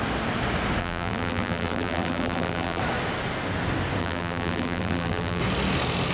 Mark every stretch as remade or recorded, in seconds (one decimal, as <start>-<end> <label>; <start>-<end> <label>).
0.0-0.8 recorded; 0.8-2.8 remade; 2.8-4.0 recorded; 4.0-5.4 remade; 5.4-6.1 recorded